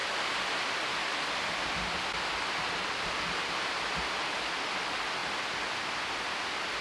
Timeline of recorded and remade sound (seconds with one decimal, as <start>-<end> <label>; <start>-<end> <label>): 0.0-6.8 recorded